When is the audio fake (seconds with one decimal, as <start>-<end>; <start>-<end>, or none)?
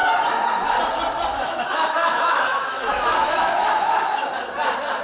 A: 1.3-4.3